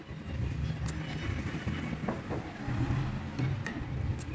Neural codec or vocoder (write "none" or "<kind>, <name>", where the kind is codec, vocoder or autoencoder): vocoder, BigVGAN v2